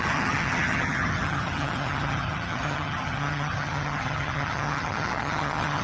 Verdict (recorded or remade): remade